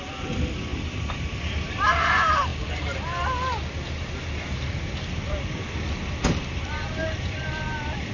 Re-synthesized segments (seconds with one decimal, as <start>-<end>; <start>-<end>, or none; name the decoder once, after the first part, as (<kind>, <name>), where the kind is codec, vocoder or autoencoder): none